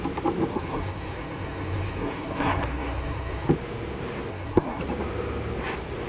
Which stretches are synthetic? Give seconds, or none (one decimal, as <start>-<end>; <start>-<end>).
0.5-3.5; 4.3-4.8